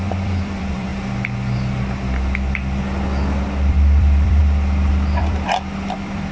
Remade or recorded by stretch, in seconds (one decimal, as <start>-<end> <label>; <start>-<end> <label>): 0.0-0.9 remade; 0.9-3.7 recorded; 3.7-4.4 remade; 4.4-4.9 recorded; 4.9-6.3 remade